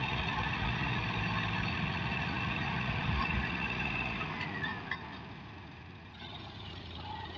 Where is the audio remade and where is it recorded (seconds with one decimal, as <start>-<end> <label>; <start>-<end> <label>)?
0.0-1.0 remade; 1.0-1.7 recorded; 1.7-4.7 remade; 4.7-5.3 recorded; 5.3-7.4 remade